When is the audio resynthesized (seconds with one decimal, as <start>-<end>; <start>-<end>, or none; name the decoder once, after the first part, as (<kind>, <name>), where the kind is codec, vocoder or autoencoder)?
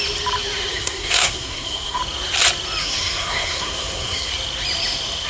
0.7-2.0 (codec, SNAC); 2.8-4.3